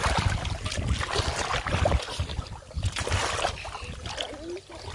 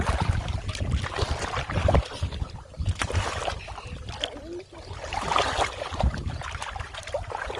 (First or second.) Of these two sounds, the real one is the first